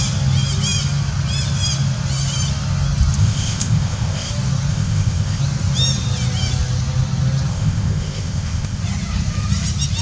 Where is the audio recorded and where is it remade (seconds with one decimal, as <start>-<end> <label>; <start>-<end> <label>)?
0.0-3.2 recorded; 3.2-4.3 remade; 4.3-4.7 recorded; 4.7-5.4 remade; 5.4-7.5 recorded; 7.5-8.8 remade; 8.8-10.0 recorded